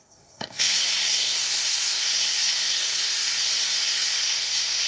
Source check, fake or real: fake